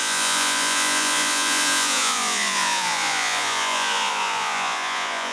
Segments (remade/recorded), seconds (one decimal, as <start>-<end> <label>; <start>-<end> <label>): 0.0-5.3 remade